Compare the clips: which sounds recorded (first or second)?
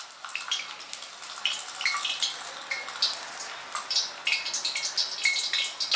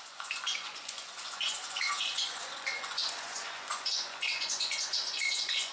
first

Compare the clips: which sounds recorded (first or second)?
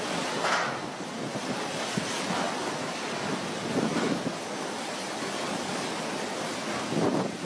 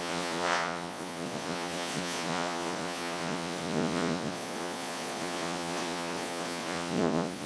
first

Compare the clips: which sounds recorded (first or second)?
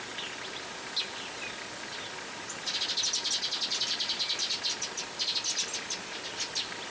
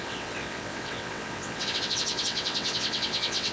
first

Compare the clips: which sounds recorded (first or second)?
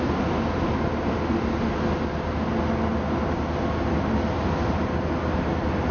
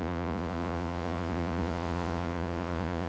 first